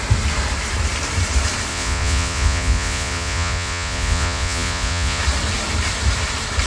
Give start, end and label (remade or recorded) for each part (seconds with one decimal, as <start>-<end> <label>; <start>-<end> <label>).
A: 0.0-1.7 recorded; 1.7-5.2 remade; 5.2-6.7 recorded